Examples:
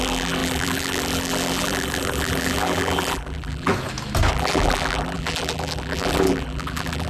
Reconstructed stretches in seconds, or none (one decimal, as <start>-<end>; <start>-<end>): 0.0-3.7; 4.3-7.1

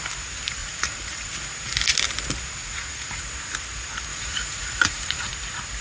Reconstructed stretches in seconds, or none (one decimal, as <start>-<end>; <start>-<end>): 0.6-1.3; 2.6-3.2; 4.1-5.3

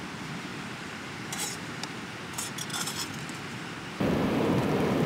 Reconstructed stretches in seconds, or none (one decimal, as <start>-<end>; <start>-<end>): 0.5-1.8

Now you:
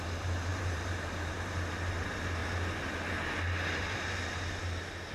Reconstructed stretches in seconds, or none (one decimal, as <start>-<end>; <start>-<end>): 0.5-1.5

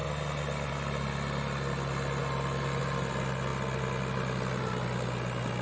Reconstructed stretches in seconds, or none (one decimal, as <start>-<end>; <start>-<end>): none

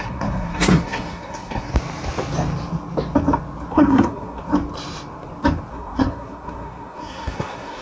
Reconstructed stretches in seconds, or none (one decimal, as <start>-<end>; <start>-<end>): 0.0-1.7; 3.7-4.4; 5.7-7.8

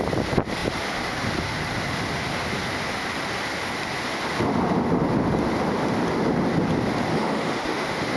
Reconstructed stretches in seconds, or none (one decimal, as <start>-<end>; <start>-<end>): 7.1-8.2